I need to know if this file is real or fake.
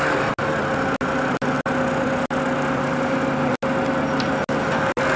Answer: real